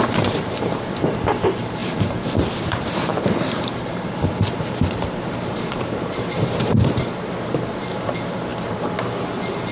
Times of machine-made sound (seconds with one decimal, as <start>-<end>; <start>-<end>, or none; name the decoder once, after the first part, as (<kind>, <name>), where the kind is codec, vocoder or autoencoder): 0.0-8.5 (vocoder, BigVGAN v2); 9.2-9.7